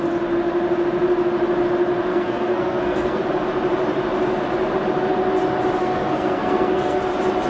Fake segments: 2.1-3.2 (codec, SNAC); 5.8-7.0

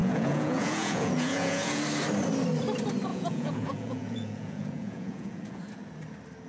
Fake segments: 0.0-1.8 (vocoder, Vocos); 3.1-5.6

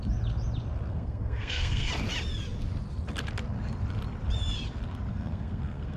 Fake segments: 0.9-1.9 (codec, SNAC); 5.1-6.0

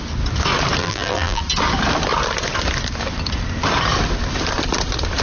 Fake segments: 0.8-1.4 (vocoder, BigVGAN v2)

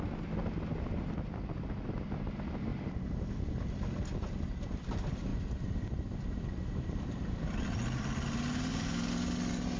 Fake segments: none

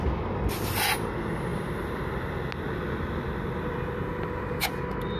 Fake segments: none

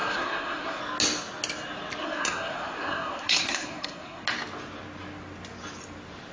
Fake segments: 0.0-0.8 (codec, SNAC); 2.0-4.2